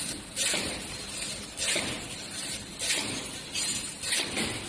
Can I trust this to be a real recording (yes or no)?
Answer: yes